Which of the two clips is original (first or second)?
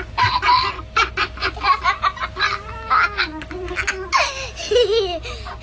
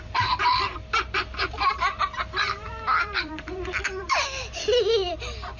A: first